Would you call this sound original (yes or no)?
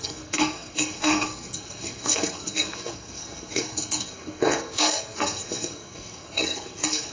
no